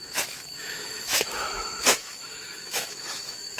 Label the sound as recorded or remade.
remade